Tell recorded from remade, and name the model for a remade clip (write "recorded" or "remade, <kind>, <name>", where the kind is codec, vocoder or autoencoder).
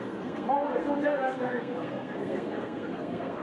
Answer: remade, codec, SNAC